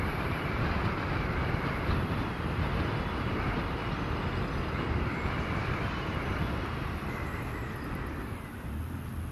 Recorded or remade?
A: recorded